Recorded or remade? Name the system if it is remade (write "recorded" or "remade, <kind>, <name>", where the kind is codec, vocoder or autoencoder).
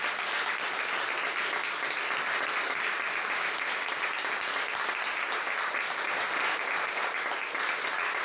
recorded